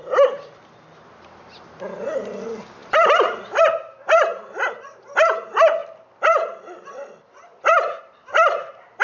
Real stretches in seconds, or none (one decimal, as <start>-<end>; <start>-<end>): 0.0-2.8; 3.6-5.8; 8.0-9.0